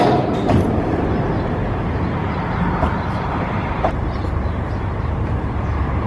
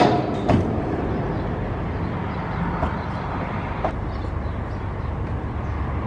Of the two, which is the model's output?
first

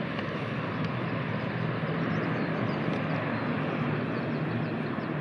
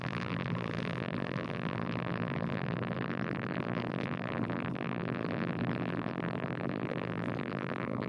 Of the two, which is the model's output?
second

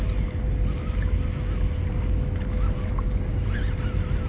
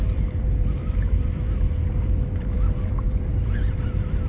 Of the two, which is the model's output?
second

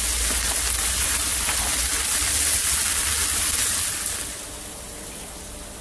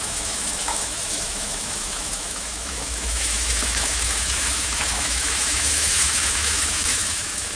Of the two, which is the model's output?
second